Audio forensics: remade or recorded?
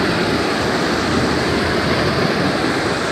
recorded